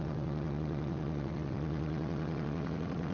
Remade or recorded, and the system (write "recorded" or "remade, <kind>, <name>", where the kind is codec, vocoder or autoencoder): remade, vocoder, WaveNeXt